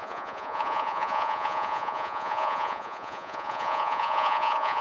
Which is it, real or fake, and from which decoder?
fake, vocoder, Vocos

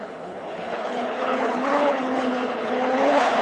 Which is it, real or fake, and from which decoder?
fake, codec, HILCodec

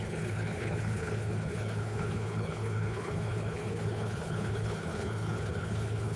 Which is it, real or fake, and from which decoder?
fake, codec, HILCodec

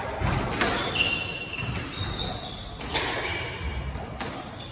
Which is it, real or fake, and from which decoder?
real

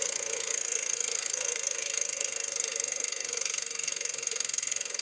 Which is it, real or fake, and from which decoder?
fake, codec, SNAC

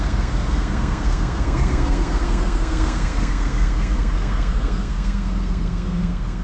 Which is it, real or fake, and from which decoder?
fake, codec, SNAC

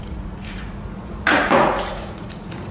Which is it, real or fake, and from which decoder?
fake, vocoder, Vocos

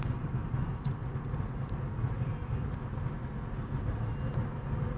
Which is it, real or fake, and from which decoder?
real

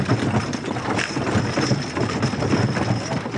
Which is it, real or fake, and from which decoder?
real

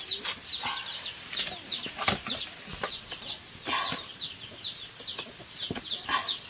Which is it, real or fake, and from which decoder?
real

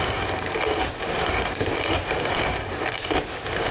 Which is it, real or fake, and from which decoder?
real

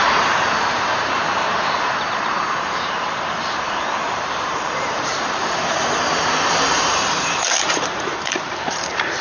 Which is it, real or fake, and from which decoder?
fake, vocoder, BigVGAN v2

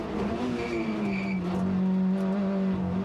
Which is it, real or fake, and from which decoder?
real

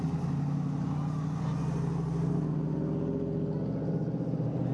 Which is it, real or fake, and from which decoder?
real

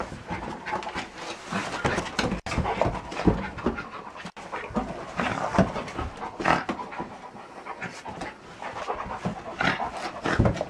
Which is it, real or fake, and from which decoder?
real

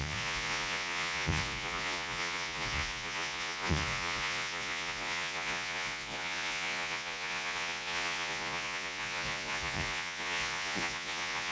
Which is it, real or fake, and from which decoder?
fake, vocoder, Vocos